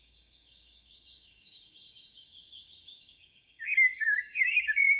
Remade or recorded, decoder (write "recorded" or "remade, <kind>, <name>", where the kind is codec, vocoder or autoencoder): remade, codec, DAC